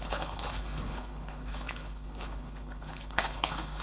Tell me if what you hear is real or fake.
fake